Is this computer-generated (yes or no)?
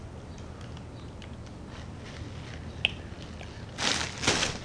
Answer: no